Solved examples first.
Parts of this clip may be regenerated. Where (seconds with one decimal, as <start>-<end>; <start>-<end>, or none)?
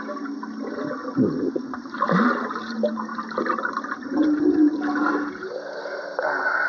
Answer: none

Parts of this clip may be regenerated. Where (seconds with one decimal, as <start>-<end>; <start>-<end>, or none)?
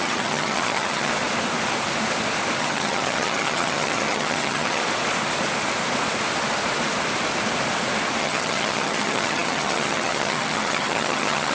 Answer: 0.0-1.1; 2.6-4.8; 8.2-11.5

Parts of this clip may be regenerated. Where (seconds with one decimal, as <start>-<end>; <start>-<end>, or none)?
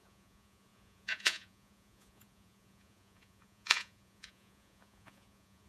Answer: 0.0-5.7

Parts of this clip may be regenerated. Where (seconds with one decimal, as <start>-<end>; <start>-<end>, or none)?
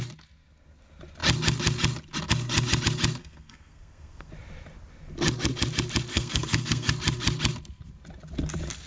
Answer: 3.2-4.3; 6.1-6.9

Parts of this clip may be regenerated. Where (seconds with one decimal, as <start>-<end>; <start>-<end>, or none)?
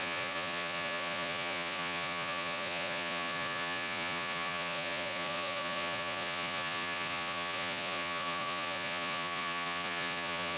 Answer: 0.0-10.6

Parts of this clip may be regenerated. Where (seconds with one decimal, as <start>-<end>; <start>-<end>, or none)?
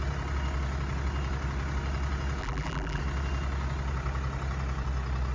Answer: 2.4-3.0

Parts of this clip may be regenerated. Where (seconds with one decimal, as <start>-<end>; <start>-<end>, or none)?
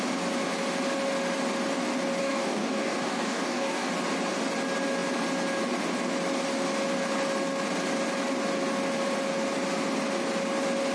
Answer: 2.2-3.9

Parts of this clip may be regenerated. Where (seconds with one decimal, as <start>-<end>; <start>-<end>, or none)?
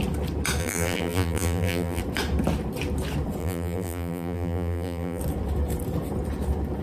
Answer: 0.6-2.0; 3.4-5.2